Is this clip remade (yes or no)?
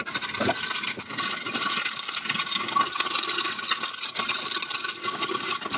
no